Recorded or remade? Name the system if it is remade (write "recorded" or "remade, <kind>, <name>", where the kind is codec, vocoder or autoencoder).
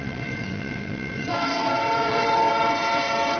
remade, vocoder, WaveNeXt